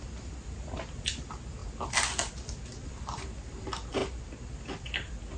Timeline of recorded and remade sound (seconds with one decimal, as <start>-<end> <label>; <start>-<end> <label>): 0.0-5.4 recorded